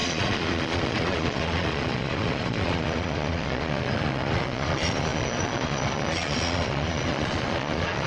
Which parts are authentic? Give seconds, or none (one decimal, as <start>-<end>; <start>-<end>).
none